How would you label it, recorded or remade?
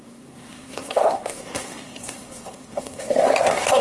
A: remade